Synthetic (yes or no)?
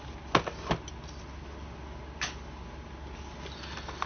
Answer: no